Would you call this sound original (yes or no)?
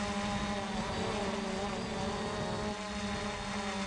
yes